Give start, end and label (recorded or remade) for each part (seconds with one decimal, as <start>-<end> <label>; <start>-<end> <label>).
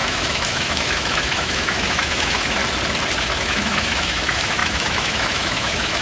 0.0-2.6 remade; 2.6-3.2 recorded; 3.2-6.0 remade